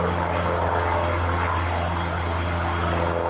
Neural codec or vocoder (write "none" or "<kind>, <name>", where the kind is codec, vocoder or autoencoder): none